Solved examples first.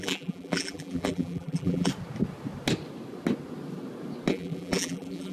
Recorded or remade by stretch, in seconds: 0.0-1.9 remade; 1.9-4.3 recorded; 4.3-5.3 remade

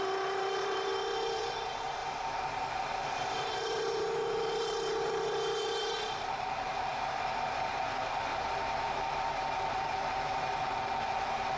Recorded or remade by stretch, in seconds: 0.0-8.3 remade; 8.3-8.8 recorded; 8.8-11.6 remade

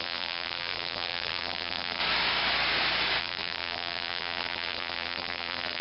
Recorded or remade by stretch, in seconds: 0.0-2.0 remade; 2.0-3.2 recorded; 3.2-5.8 remade

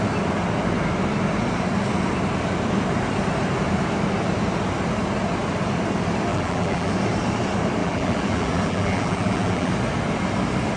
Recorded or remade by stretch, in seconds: 0.0-6.3 recorded; 6.3-6.9 remade; 6.9-7.8 recorded; 7.8-9.7 remade; 9.7-10.8 recorded

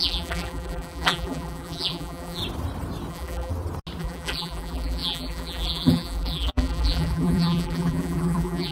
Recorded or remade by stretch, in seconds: 0.0-2.4 remade; 2.4-3.1 recorded; 3.1-3.5 remade; 3.5-4.0 recorded; 4.0-8.7 remade

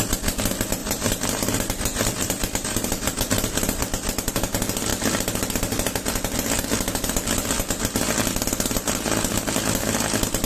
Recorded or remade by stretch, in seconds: 0.0-0.8 recorded; 0.8-4.3 remade; 4.3-10.5 recorded